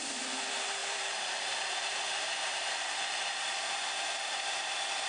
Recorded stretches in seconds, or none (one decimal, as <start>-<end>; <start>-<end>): 0.0-0.8; 3.9-5.1